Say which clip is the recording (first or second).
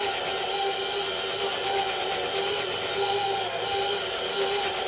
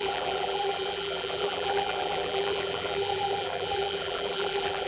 first